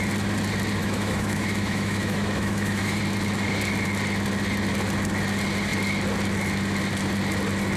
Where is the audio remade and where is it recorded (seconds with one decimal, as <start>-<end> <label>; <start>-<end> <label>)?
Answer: 0.0-0.8 recorded; 0.8-3.0 remade; 3.0-7.8 recorded